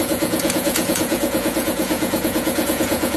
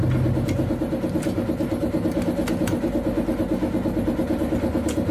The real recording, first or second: second